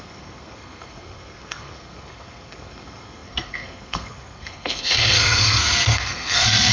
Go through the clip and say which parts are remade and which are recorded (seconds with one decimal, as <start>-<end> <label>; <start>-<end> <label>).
0.0-6.7 remade